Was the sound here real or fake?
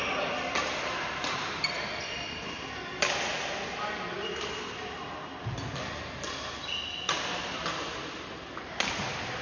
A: real